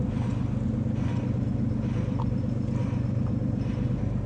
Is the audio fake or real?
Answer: real